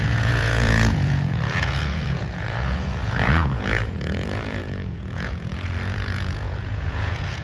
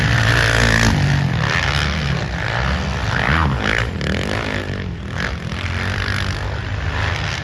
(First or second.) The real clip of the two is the second